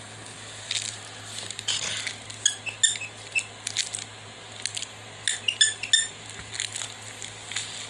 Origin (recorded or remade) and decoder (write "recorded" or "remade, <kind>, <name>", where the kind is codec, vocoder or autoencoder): recorded